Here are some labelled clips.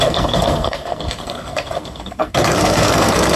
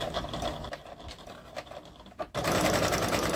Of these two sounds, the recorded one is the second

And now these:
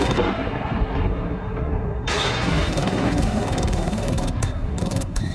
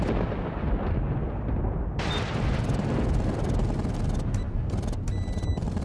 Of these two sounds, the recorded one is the second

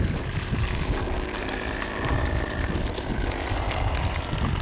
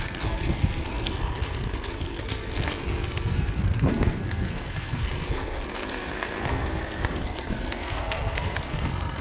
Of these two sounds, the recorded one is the first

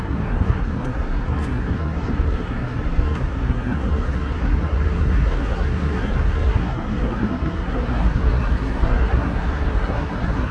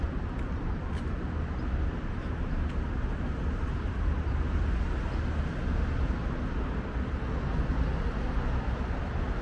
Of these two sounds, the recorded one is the second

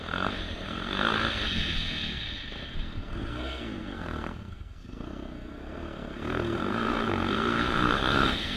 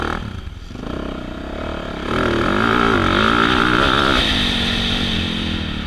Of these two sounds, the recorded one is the second